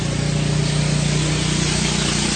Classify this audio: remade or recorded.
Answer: recorded